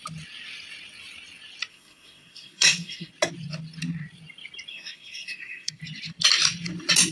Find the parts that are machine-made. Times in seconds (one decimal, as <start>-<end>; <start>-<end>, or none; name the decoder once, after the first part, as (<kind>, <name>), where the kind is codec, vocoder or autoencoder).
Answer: 1.7-3.1 (codec, SNAC); 4.7-5.8